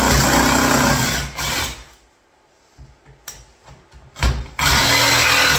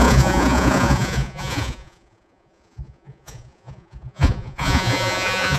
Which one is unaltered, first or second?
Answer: first